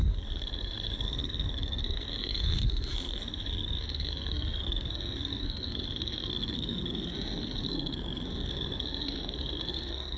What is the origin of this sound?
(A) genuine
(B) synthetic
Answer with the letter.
B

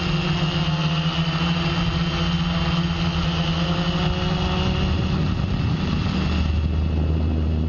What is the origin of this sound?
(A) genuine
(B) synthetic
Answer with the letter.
A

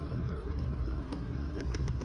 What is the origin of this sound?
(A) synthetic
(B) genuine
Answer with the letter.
A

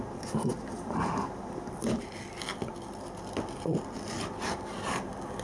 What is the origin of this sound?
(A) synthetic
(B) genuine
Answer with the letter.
B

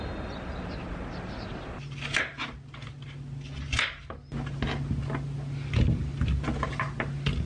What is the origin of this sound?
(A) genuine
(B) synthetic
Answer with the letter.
A